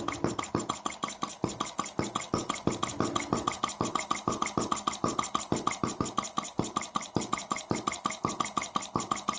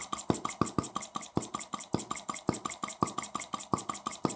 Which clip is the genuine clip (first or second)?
first